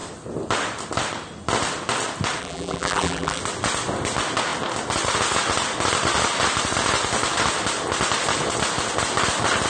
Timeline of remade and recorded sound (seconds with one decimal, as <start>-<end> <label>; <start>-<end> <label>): 0.0-2.4 recorded; 2.4-3.4 remade; 3.4-9.7 recorded

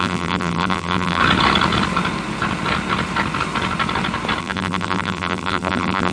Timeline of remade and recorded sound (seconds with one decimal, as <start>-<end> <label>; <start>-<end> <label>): 0.0-1.2 remade; 1.2-4.4 recorded; 4.4-6.1 remade

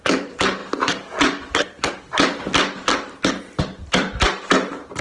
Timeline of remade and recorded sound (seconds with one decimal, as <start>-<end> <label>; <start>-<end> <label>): 0.0-5.0 recorded

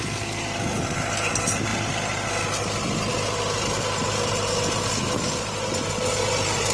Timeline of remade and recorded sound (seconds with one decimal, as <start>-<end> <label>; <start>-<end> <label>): 0.0-6.7 recorded

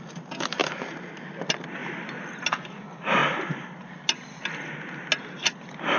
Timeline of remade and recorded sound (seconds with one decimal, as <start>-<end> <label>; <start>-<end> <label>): 0.0-0.6 recorded; 0.6-1.4 remade; 1.4-6.0 recorded

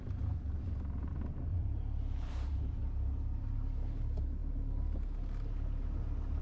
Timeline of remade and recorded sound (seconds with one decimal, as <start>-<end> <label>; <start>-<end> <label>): 0.0-1.5 recorded; 1.5-2.8 remade; 2.8-6.4 recorded

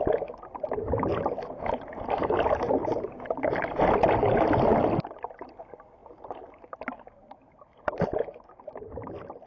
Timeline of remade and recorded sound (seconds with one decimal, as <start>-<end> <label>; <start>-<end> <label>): 0.0-2.8 recorded; 2.8-3.9 remade; 3.9-4.7 recorded; 4.7-5.6 remade; 5.6-9.5 recorded